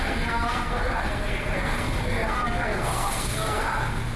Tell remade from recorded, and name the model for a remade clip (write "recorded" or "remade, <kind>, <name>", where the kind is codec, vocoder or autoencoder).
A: remade, codec, SNAC